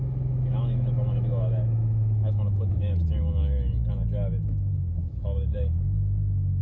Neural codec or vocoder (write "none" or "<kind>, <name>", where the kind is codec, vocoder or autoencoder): autoencoder, DAC-VAE